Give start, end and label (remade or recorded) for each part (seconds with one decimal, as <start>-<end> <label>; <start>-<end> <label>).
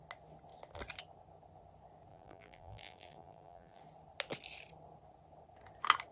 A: 0.0-2.1 recorded; 2.1-3.8 remade; 3.8-6.1 recorded